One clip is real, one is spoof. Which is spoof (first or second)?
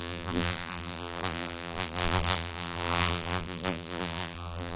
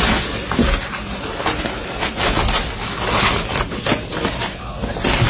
first